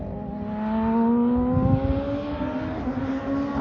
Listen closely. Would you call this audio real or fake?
real